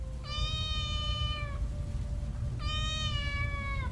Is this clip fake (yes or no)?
no